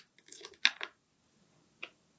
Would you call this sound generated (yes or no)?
no